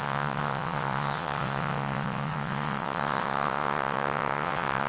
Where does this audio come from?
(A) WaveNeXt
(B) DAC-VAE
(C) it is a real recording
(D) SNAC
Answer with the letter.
A